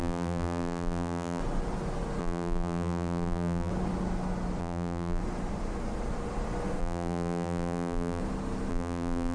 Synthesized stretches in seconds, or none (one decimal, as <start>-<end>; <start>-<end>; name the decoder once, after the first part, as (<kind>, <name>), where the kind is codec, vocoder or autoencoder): 0.0-1.4 (vocoder, BigVGAN v2); 2.2-3.7; 4.6-5.2; 6.8-8.2; 8.7-9.3